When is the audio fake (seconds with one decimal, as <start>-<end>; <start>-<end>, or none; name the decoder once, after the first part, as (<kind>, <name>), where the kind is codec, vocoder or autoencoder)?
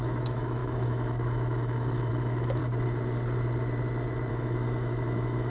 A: 0.0-2.6 (autoencoder, DAC-VAE); 4.3-5.5